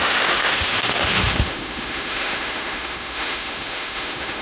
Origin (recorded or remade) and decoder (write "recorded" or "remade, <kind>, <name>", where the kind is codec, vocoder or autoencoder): remade, autoencoder, DAC-VAE